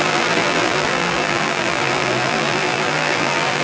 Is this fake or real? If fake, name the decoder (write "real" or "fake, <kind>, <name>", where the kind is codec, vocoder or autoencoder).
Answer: fake, vocoder, BigVGAN v2